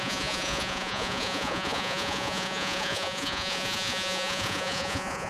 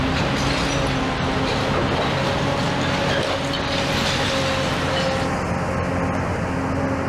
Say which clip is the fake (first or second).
first